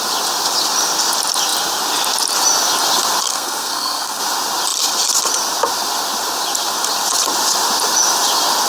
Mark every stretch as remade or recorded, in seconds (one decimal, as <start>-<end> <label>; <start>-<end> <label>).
0.0-3.3 recorded; 3.3-4.2 remade; 4.2-8.7 recorded